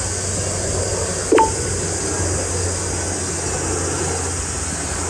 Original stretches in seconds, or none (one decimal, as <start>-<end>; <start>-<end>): 0.0-5.1